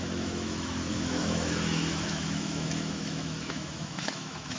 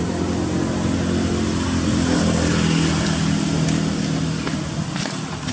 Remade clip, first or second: first